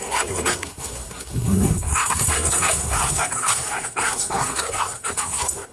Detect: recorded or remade remade